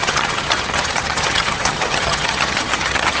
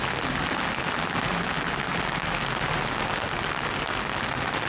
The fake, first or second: first